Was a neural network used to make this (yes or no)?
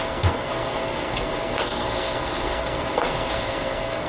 yes